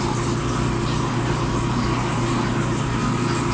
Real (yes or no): yes